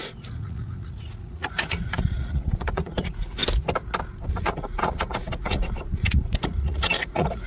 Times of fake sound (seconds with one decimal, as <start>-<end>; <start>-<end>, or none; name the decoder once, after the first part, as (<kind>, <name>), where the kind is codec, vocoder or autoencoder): 0.0-3.4 (vocoder, Vocos); 4.3-7.5